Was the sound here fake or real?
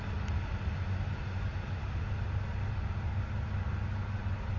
real